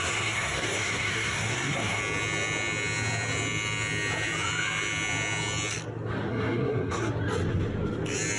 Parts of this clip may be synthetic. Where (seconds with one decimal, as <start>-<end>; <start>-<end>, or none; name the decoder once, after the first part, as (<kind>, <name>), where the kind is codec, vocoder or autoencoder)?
0.0-2.0 (codec, SNAC); 6.3-7.1